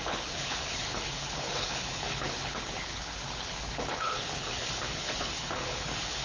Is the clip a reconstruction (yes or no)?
yes